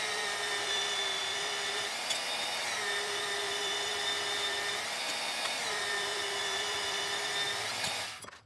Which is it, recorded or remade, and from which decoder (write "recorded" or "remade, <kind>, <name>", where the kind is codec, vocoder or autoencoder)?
remade, vocoder, BigVGAN v2